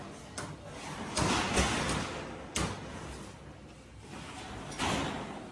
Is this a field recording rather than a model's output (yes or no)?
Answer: yes